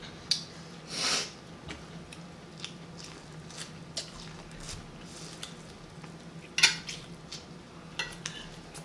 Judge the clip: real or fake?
real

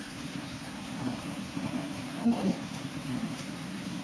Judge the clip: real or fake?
fake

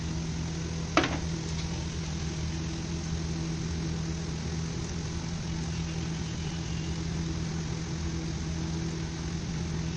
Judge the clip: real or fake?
real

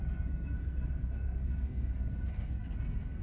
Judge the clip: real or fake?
fake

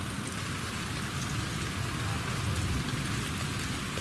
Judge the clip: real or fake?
real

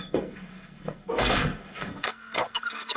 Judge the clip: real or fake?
fake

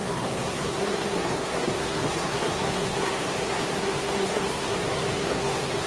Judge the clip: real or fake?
fake